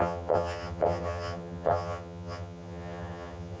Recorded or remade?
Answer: remade